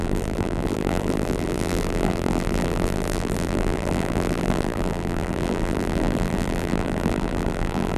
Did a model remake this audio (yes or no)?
yes